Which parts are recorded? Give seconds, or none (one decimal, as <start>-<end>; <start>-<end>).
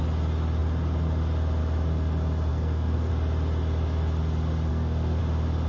0.0-2.5; 3.1-4.7; 5.2-5.7